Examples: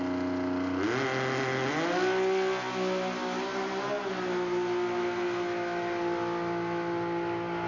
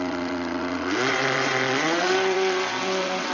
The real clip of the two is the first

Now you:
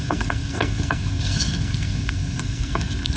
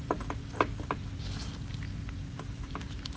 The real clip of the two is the second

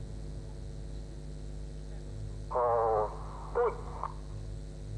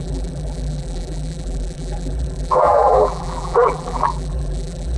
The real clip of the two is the first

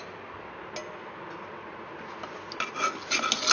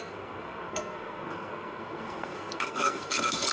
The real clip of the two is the first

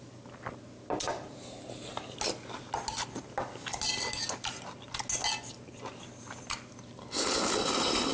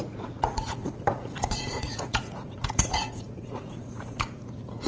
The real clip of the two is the first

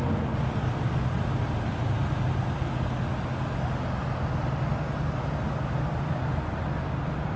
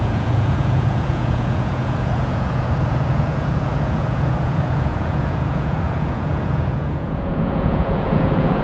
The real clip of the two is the first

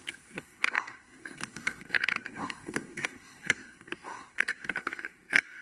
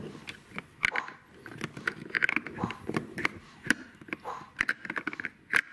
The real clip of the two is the second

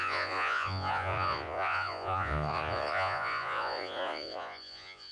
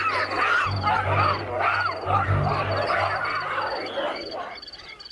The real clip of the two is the second